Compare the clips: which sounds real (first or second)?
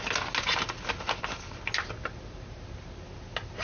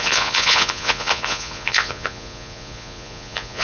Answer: first